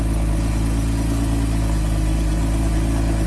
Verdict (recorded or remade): recorded